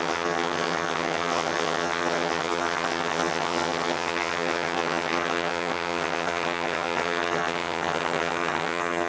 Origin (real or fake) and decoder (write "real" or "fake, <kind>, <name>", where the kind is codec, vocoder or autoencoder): fake, vocoder, HiFi-GAN